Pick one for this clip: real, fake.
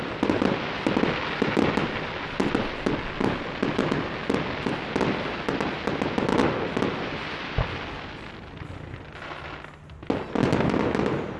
real